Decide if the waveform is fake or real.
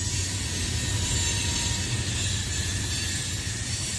real